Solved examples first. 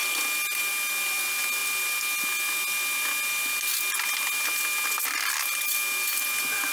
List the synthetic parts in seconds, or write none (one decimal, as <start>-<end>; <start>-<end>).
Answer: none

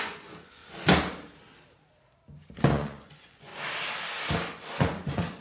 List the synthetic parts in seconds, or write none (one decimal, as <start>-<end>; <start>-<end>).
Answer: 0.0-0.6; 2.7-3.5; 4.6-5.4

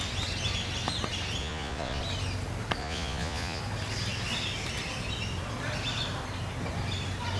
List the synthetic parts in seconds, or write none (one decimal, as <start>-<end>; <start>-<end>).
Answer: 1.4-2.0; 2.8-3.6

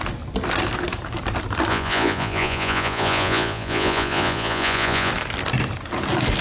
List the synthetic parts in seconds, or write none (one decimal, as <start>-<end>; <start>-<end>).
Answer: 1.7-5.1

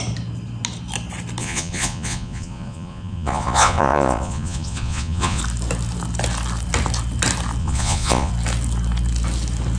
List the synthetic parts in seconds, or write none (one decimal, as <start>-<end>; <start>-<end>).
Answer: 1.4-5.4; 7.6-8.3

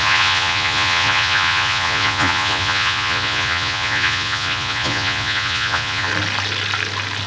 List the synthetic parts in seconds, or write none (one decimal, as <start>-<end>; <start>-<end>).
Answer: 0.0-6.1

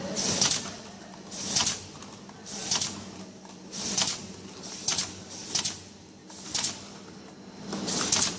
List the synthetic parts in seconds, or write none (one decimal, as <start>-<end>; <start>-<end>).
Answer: none